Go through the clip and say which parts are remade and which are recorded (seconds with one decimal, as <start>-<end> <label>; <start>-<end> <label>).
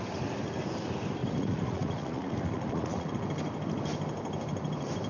0.0-1.2 recorded; 1.2-3.1 remade; 3.1-5.1 recorded